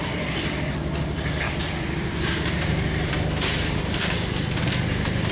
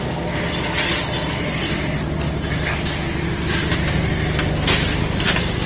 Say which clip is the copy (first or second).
first